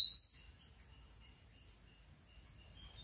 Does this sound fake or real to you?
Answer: real